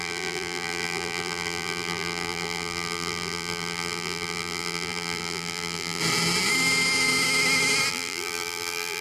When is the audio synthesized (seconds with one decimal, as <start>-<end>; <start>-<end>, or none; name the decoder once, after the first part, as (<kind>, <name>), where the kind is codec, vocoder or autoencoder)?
0.0-6.0 (vocoder, BigVGAN v2); 7.9-9.0